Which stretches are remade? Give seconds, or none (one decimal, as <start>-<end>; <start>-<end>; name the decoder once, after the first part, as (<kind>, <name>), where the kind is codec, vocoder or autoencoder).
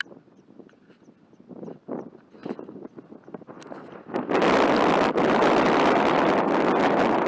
none